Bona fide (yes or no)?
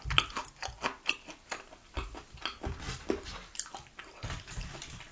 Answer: yes